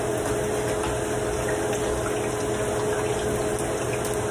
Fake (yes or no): no